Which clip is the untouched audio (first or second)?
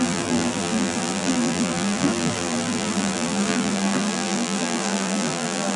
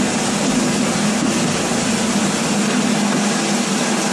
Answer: second